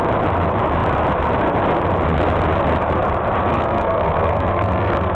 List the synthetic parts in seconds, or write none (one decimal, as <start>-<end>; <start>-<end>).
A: 3.5-5.1